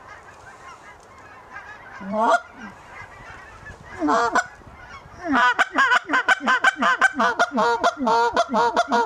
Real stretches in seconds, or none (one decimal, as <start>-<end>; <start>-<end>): 0.0-1.5; 3.4-9.1

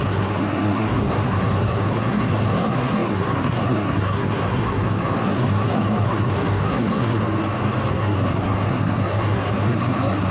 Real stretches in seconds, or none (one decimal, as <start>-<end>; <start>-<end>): 7.2-7.9

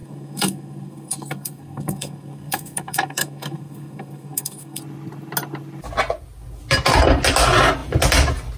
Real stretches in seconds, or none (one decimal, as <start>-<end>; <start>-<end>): 4.8-8.6

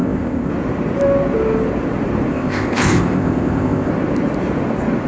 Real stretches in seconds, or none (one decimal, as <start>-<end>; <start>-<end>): 0.5-2.3; 3.9-5.1

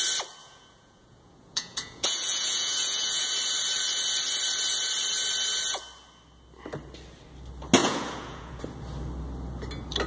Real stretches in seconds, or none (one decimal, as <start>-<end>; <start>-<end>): 0.0-0.4; 3.3-7.8; 8.6-10.1